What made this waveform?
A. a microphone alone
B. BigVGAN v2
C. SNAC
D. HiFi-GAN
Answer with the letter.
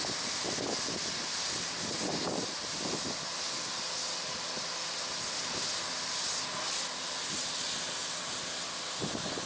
A